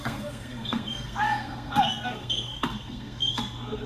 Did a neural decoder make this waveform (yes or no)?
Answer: yes